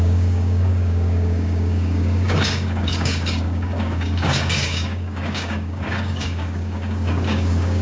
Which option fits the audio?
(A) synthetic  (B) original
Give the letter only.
A